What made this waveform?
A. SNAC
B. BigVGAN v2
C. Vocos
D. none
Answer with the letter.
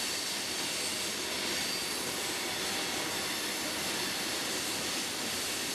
D